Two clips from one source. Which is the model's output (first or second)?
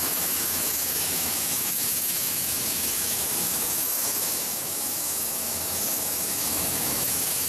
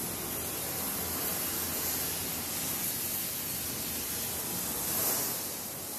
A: first